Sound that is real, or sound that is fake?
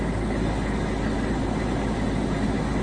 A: real